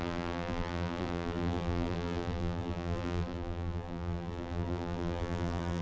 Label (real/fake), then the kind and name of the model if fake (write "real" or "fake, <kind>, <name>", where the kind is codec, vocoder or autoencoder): fake, vocoder, BigVGAN v2